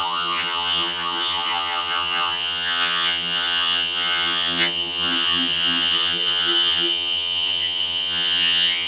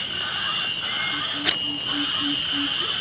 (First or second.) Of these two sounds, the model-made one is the first